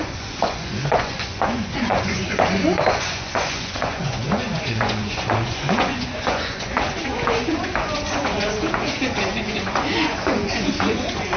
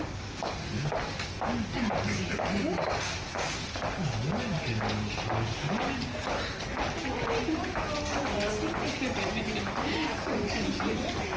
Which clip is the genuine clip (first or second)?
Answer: second